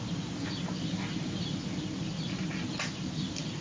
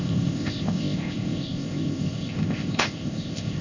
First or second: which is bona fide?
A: first